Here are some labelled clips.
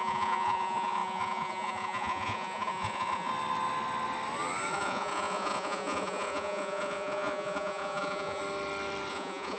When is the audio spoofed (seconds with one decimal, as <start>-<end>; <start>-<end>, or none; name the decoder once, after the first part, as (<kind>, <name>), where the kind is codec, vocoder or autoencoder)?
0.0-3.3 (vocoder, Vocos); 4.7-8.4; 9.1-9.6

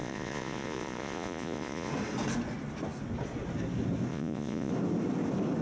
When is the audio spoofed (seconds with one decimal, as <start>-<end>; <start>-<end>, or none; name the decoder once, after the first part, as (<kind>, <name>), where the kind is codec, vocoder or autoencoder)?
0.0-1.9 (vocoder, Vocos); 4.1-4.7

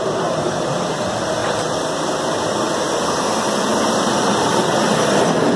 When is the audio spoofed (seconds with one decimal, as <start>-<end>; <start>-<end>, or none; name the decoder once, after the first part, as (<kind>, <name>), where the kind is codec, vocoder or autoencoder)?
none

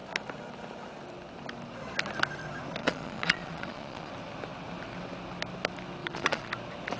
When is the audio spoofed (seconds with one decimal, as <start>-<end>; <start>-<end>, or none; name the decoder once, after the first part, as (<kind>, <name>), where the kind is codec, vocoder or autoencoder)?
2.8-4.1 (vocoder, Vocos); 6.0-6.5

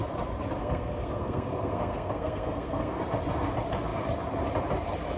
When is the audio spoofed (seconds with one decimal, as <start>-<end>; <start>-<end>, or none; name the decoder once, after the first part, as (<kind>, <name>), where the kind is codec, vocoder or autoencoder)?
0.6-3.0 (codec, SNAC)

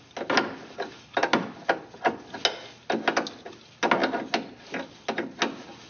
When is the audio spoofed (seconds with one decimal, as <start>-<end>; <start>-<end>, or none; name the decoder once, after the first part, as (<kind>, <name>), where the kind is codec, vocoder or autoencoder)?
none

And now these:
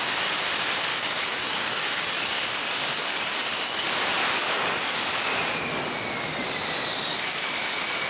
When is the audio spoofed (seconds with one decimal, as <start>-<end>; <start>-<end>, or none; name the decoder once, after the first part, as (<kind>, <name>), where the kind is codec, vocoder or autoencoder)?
0.9-3.9 (codec, DAC); 4.4-5.2; 7.1-8.1